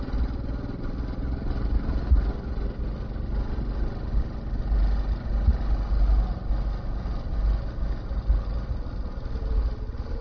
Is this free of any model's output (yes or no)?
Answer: yes